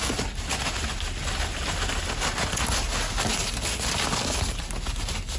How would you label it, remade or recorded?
recorded